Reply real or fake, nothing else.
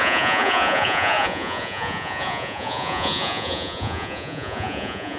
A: fake